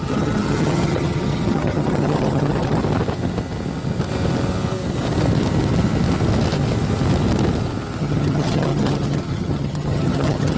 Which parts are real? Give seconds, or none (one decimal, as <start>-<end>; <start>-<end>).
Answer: 2.8-8.0